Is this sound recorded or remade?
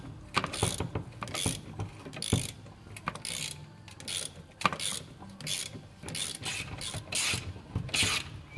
recorded